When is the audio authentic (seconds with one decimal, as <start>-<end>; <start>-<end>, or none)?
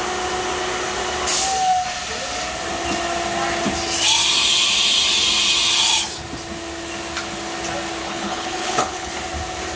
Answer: 0.0-8.0; 9.1-9.8